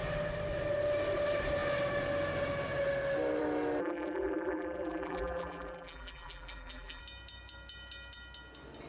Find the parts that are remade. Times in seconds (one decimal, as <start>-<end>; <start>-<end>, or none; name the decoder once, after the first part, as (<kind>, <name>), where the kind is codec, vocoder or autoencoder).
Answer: 3.8-7.0 (vocoder, BigVGAN v2)